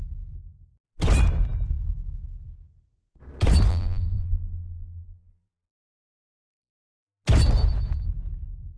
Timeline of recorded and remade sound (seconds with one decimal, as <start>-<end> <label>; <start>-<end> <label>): 0.0-3.7 recorded; 3.7-6.7 remade; 6.7-8.8 recorded

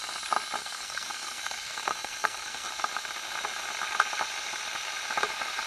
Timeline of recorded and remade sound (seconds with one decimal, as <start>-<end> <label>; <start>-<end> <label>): 0.0-0.6 recorded; 0.6-2.7 remade; 2.7-5.7 recorded

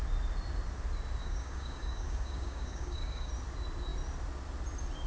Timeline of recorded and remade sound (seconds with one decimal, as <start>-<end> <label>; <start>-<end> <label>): 0.0-1.2 recorded; 1.2-3.3 remade; 3.3-5.1 recorded

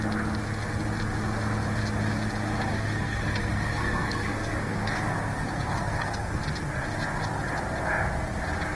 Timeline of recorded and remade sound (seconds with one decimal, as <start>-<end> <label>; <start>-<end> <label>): 0.0-2.7 recorded; 2.7-6.4 remade; 6.4-8.8 recorded